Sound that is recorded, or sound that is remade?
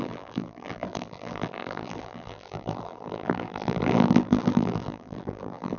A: remade